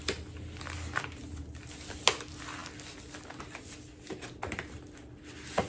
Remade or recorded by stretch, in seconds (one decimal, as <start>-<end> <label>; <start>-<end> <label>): 0.0-5.7 recorded

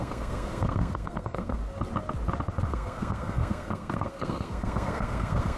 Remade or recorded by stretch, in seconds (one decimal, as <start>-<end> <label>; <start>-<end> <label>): 0.0-1.6 remade; 1.6-2.7 recorded; 2.7-5.6 remade

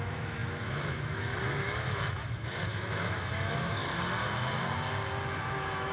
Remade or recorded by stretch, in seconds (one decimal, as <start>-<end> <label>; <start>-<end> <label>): 0.0-3.8 remade; 3.8-5.4 recorded; 5.4-5.9 remade